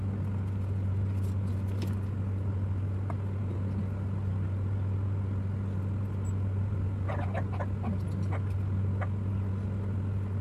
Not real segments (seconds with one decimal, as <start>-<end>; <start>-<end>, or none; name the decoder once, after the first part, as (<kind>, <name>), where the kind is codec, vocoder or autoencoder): none

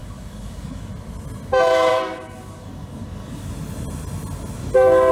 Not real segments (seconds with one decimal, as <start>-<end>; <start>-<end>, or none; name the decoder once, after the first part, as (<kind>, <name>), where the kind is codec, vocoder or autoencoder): 0.0-0.9 (codec, DAC); 1.9-3.5

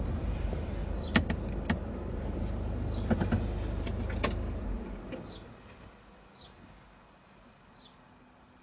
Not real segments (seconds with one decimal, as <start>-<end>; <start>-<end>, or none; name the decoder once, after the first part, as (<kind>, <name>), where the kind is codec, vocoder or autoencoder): none